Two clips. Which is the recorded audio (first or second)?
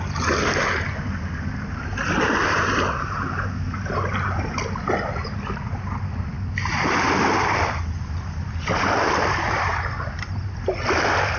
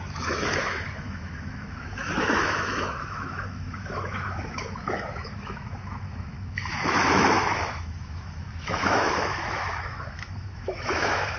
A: first